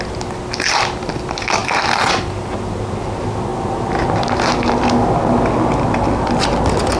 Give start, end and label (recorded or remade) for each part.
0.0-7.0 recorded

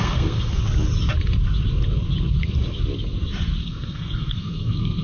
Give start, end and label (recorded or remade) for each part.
0.0-0.6 remade; 0.6-3.6 recorded; 3.6-5.0 remade

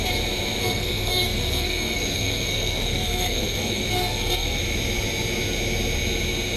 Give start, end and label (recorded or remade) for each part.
0.0-0.6 recorded; 0.6-4.6 remade; 4.6-6.6 recorded

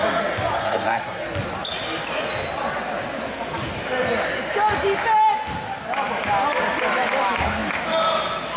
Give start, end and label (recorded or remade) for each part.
0.0-0.6 recorded; 0.6-1.2 remade; 1.2-8.6 recorded